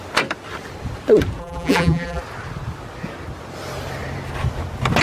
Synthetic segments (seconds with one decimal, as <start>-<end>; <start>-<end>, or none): 1.4-2.2